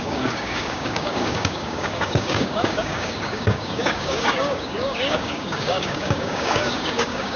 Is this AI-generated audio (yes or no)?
yes